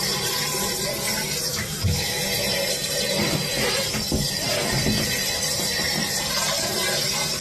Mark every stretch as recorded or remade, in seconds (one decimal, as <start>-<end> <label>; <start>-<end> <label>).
0.0-1.5 recorded; 1.5-2.2 remade; 2.2-7.4 recorded